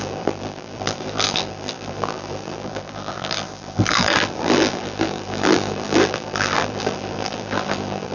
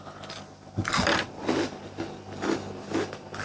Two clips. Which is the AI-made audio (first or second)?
first